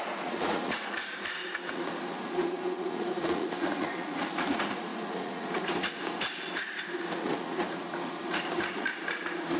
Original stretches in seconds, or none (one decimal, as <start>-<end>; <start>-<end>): none